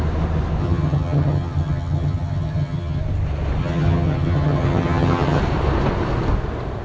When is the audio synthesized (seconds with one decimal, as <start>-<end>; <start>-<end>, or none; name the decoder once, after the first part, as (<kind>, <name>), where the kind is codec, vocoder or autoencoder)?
0.6-3.0 (vocoder, HiFi-GAN); 3.6-5.4